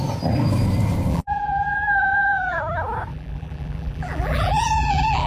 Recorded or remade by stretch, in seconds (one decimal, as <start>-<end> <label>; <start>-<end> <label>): 0.0-1.1 recorded; 1.1-2.6 remade; 2.6-3.1 recorded; 3.1-5.3 remade